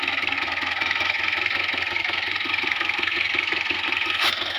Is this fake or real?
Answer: fake